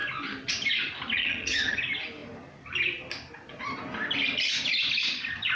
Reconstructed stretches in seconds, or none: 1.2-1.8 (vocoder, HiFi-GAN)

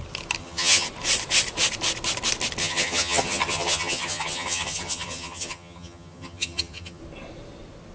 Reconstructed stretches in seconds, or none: 0.4-0.9 (vocoder, HiFi-GAN); 2.6-7.0

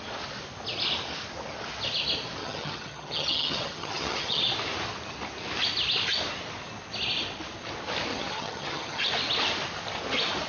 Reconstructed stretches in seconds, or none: 2.4-4.4 (vocoder, HiFi-GAN); 8.1-9.1

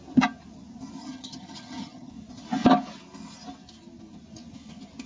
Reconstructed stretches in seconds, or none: 1.0-2.1 (vocoder, HiFi-GAN)

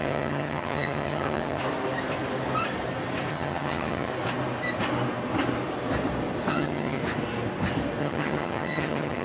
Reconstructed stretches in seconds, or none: 0.0-1.6 (vocoder, HiFi-GAN); 3.3-4.1; 6.5-7.0; 8.0-9.2

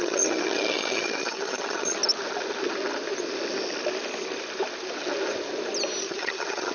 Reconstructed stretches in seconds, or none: 0.0-2.0 (vocoder, HiFi-GAN); 6.0-6.7

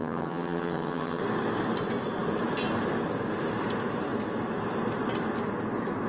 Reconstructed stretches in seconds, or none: 0.0-1.2 (vocoder, HiFi-GAN)

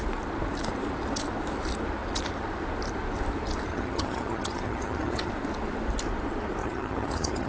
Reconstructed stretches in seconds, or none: 3.7-5.3 (vocoder, HiFi-GAN); 6.6-7.5